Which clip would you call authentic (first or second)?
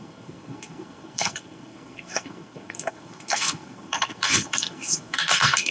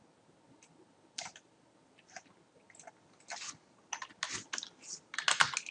second